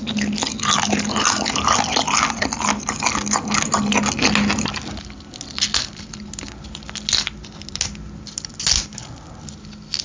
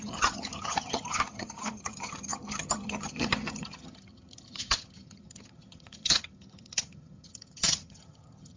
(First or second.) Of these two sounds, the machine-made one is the second